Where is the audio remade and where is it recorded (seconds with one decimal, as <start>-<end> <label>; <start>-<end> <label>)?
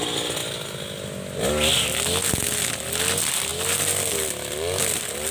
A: 0.0-5.3 recorded